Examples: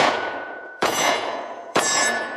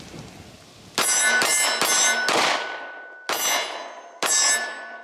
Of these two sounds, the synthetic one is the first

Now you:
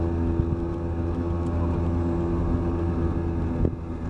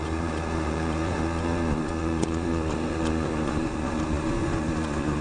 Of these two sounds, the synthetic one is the second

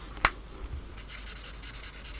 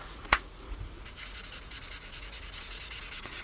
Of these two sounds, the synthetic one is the second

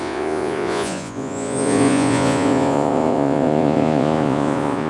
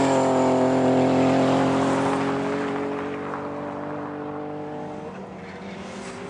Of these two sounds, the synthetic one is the first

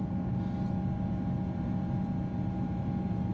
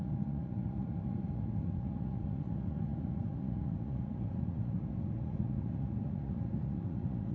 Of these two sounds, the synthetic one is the second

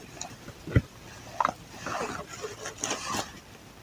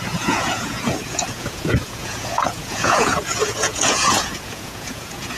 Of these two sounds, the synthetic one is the second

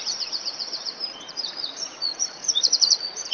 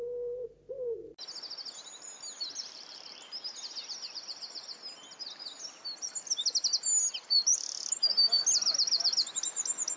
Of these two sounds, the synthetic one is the first